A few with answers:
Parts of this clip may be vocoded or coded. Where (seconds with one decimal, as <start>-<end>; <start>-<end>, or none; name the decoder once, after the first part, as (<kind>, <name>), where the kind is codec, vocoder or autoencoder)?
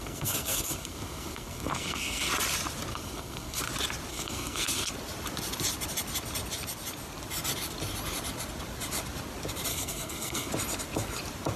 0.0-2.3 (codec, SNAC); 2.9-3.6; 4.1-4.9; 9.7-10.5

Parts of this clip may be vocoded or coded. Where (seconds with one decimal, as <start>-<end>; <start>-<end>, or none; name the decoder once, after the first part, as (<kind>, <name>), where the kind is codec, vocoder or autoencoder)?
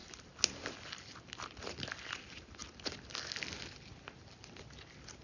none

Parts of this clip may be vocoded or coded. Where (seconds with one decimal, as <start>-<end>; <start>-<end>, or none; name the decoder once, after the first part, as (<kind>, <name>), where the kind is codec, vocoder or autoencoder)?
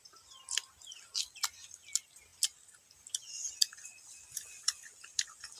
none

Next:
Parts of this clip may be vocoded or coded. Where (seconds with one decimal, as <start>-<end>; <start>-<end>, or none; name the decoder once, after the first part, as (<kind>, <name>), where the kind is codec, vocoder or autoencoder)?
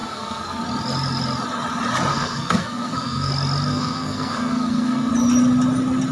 0.0-0.6 (codec, SNAC); 2.1-3.3; 3.7-5.1